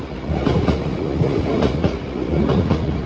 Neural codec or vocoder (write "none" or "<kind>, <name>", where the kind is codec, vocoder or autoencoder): vocoder, Vocos